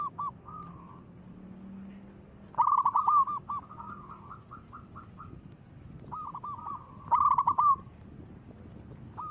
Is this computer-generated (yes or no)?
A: no